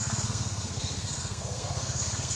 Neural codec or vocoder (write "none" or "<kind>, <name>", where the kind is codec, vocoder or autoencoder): codec, SNAC